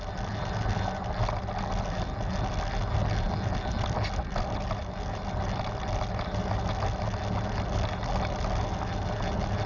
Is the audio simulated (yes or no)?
no